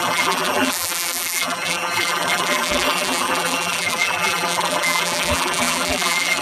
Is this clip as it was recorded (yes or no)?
no